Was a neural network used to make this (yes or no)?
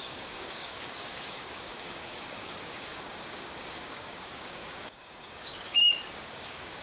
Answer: yes